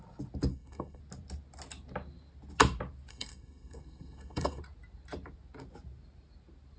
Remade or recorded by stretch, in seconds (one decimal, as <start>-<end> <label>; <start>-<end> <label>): 0.0-0.5 recorded; 0.5-1.0 remade; 1.0-3.1 recorded; 3.1-4.6 remade; 4.6-6.8 recorded